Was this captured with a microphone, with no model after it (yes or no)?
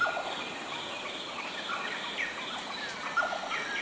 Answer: yes